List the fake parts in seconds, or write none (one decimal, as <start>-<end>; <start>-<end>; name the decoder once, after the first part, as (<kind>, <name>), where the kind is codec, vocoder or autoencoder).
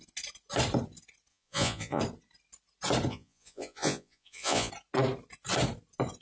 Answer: 1.3-2.0 (vocoder, Vocos); 3.1-4.7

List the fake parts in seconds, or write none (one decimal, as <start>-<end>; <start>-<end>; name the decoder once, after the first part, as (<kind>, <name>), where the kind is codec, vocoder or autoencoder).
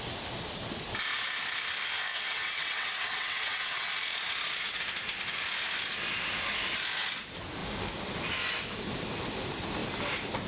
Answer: 2.1-3.9 (vocoder, WaveNeXt)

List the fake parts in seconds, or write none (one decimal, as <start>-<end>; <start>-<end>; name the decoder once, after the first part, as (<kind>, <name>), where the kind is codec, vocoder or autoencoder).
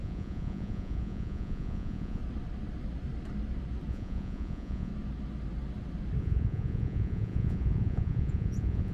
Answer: 0.0-2.2 (vocoder, Vocos); 3.9-4.9; 6.2-8.9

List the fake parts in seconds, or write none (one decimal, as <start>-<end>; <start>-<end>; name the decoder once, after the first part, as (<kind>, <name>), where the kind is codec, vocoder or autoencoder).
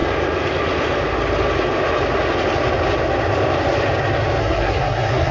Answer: 4.4-5.3 (codec, SNAC)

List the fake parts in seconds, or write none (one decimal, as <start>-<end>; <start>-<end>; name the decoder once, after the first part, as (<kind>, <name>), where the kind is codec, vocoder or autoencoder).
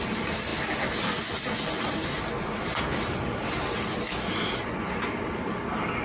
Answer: none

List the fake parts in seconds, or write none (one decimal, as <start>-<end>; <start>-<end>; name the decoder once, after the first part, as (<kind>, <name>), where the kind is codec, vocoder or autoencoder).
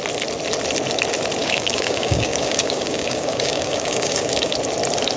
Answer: 1.4-4.5 (codec, DAC)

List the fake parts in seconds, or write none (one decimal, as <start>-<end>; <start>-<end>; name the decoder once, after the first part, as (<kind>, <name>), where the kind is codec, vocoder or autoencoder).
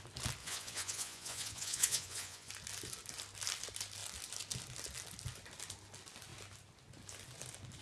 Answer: 0.4-2.5 (vocoder, Vocos)